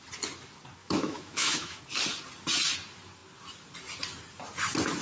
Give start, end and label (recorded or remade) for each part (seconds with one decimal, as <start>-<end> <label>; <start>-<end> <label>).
0.0-0.8 recorded; 0.8-1.8 remade; 1.8-5.0 recorded